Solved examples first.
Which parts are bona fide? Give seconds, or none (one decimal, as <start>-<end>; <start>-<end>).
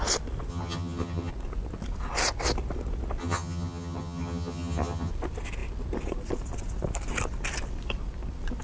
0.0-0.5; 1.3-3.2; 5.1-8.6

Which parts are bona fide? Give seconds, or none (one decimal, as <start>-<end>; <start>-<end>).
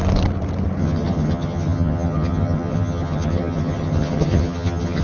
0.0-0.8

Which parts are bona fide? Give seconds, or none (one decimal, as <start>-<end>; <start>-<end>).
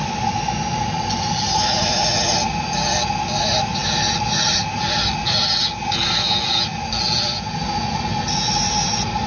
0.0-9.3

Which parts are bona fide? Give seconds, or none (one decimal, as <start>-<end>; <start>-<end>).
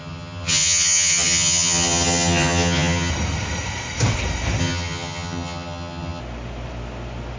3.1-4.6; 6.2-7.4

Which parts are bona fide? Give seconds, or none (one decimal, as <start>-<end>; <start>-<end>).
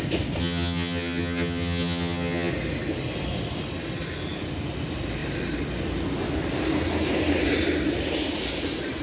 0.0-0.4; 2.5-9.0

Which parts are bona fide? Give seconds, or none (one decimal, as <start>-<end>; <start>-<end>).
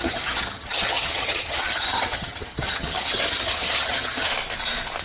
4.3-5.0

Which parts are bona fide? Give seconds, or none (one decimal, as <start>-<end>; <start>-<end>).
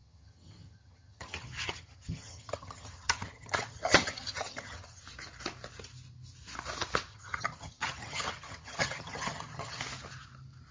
5.0-7.1; 9.8-10.7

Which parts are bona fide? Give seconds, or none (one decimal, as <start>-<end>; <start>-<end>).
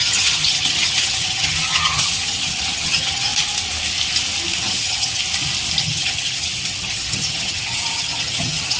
3.3-4.6; 5.2-5.8